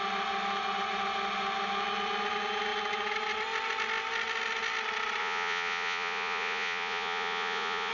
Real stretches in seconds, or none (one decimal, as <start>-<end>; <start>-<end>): 0.0-5.2